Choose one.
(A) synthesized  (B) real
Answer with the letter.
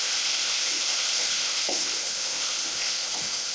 A